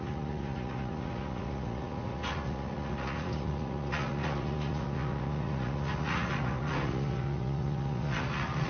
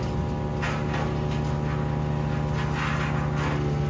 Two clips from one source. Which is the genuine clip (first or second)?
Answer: second